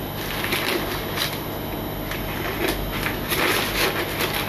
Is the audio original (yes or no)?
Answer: yes